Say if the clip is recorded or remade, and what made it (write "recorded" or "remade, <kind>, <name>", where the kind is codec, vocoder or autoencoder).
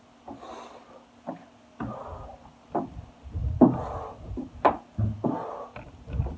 recorded